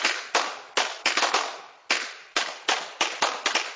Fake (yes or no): no